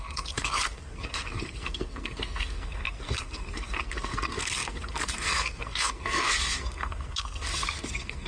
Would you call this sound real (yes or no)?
no